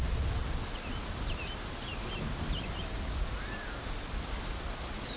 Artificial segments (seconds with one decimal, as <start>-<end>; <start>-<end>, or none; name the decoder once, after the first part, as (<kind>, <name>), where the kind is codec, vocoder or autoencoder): none